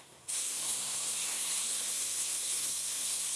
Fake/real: fake